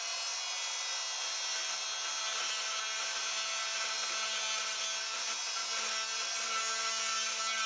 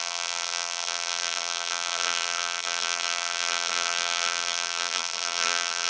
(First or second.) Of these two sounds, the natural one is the first